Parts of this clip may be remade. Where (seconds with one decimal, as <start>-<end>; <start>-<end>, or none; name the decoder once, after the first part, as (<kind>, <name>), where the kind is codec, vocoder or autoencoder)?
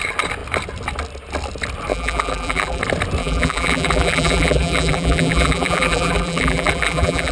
1.9-2.8 (vocoder, BigVGAN v2); 3.2-7.3